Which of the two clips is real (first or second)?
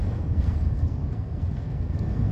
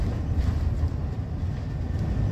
second